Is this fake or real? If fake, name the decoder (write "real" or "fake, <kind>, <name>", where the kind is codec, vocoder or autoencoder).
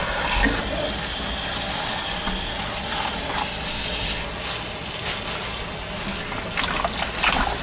real